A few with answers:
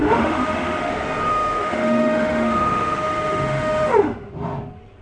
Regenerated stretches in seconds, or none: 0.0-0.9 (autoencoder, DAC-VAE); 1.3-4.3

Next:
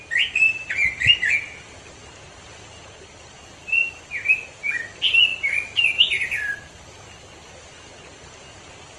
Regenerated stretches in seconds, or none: none

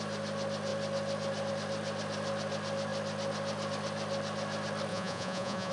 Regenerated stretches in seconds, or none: 4.9-5.7 (vocoder, Vocos)

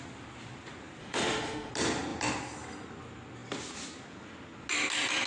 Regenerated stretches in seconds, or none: 1.0-1.7 (autoencoder, DAC-VAE)